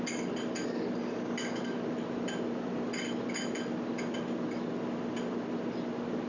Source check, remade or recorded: recorded